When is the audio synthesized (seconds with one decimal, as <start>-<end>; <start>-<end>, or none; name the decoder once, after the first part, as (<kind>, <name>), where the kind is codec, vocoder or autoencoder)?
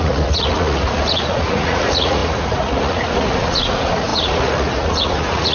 0.0-5.5 (vocoder, Vocos)